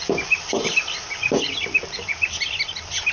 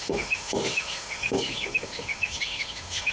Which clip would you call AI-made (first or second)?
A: second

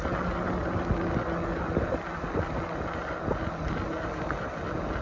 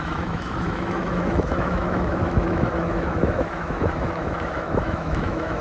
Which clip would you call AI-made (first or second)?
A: second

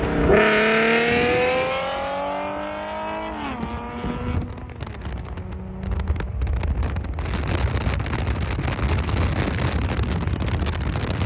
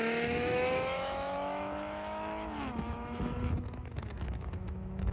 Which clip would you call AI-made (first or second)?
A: second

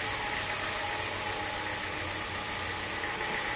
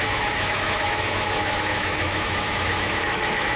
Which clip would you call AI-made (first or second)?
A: second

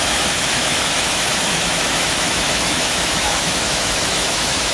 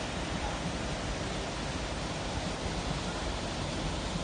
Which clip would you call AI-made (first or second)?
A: first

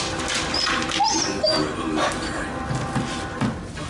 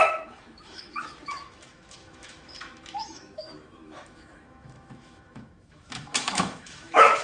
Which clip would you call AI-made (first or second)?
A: second